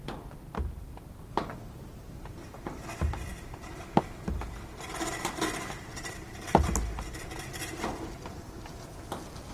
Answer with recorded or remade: recorded